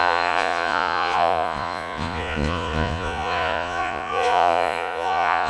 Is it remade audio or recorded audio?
remade